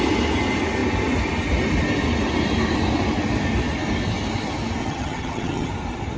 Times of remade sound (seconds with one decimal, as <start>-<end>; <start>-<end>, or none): 4.8-5.7